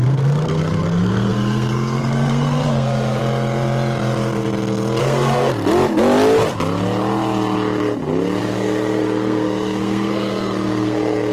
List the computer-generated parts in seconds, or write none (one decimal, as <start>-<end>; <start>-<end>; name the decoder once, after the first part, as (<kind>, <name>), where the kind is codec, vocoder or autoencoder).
0.0-3.2 (codec, SNAC); 5.0-5.5; 8.4-11.3